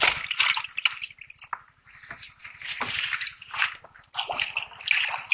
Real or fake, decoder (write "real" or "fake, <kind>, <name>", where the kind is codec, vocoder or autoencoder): real